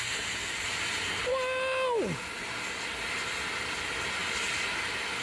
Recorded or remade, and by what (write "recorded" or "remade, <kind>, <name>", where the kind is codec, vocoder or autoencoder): recorded